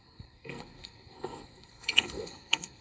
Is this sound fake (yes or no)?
yes